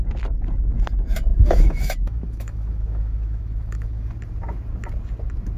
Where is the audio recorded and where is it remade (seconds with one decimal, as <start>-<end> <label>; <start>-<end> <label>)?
0.0-1.3 recorded; 1.3-4.1 remade; 4.1-5.6 recorded